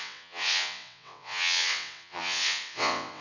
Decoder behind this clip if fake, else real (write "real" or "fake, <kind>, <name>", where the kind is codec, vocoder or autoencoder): fake, vocoder, WaveNeXt